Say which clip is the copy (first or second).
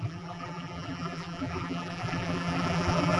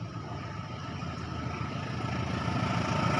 first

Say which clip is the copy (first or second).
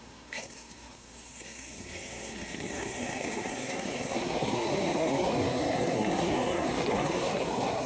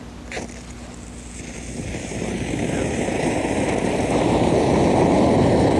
first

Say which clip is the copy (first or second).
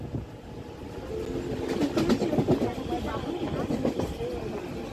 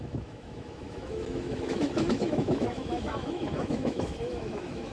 second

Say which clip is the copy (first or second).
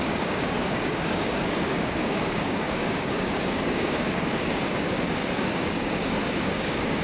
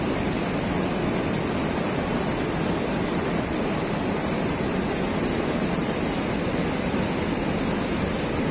first